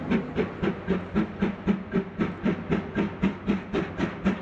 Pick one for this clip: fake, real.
real